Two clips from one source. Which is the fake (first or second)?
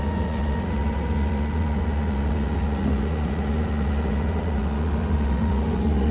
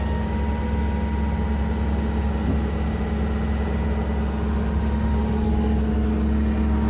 first